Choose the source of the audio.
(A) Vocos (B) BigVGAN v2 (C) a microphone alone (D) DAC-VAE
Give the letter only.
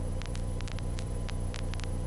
B